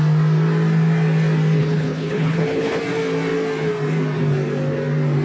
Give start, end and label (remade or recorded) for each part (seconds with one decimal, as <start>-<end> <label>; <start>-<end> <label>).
0.0-1.6 recorded; 1.6-2.8 remade; 2.8-5.2 recorded